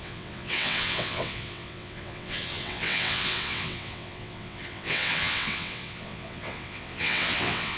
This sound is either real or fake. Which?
fake